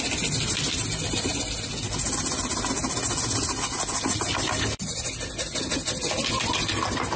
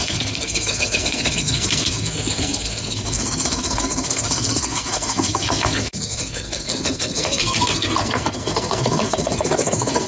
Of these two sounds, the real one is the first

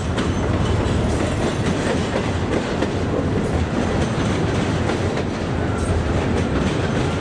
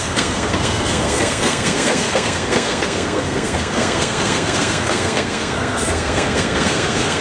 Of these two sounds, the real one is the first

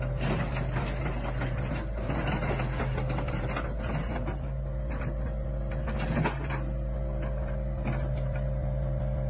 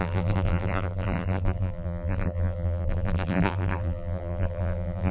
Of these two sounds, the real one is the first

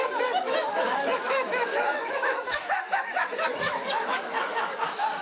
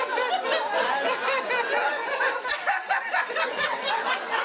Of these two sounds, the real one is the second